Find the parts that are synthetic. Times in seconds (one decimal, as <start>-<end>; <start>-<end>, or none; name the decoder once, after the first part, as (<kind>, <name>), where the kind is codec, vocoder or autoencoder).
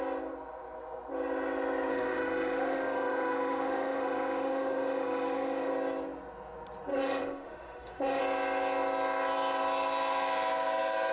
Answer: 1.9-5.7 (autoencoder, DAC-VAE); 6.9-8.2